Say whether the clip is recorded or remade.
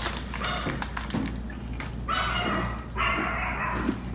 recorded